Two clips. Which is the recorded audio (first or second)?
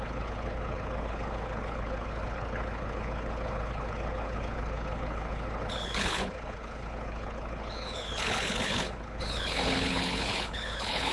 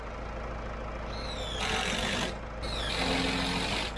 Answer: second